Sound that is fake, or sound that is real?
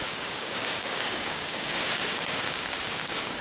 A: fake